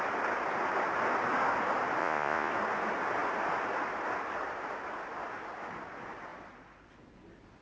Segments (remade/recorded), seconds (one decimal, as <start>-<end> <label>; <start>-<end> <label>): 0.0-2.0 recorded; 2.0-2.5 remade; 2.5-7.6 recorded